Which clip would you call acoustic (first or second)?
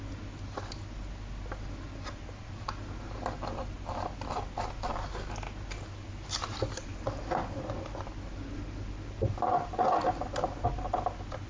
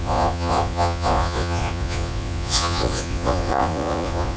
first